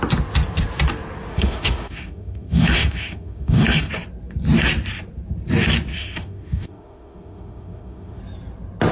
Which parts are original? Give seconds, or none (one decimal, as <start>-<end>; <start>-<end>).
0.0-1.3; 3.9-5.9; 8.2-8.9